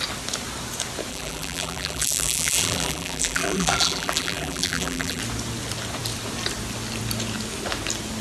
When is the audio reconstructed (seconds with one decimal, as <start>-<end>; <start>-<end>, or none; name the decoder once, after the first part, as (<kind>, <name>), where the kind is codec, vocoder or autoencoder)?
1.1-5.2 (vocoder, BigVGAN v2)